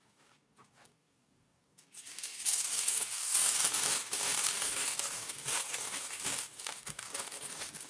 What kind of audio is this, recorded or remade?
remade